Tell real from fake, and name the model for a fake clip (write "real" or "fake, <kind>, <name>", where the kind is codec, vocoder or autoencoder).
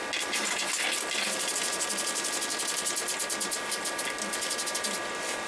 real